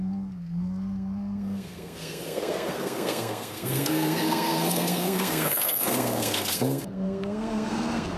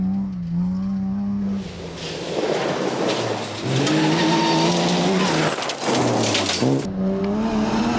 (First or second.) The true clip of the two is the second